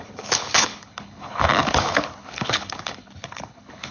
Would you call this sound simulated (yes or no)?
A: yes